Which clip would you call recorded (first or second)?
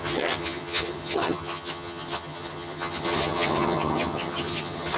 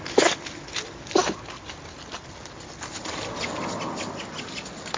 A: second